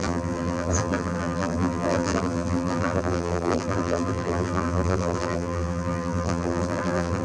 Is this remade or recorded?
remade